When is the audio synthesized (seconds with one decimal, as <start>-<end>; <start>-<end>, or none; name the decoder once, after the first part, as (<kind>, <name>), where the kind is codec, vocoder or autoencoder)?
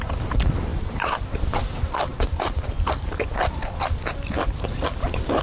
0.7-1.6 (vocoder, BigVGAN v2)